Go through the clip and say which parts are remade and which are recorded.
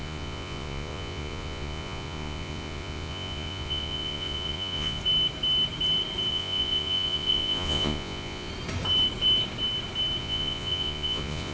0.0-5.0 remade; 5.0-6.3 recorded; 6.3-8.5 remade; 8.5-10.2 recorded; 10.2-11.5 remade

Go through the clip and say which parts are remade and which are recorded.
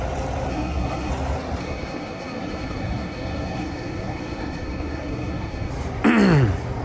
0.0-0.5 recorded; 0.5-1.1 remade; 1.1-1.6 recorded; 1.6-5.7 remade; 5.7-6.8 recorded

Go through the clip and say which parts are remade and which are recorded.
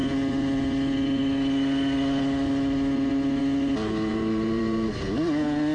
0.0-4.1 recorded; 4.1-4.9 remade; 4.9-5.7 recorded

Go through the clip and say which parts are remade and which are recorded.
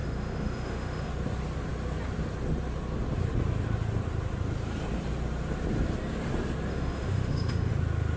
0.0-1.1 remade; 1.1-6.7 recorded; 6.7-7.7 remade; 7.7-8.2 recorded